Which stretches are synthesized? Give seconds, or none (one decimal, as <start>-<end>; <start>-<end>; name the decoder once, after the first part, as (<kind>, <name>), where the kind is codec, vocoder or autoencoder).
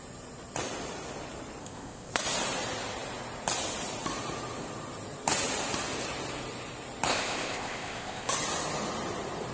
1.6-2.1 (codec, ZipCodec); 7.1-8.3